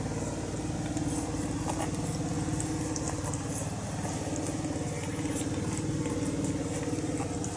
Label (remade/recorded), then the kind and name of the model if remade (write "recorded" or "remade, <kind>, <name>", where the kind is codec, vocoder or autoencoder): recorded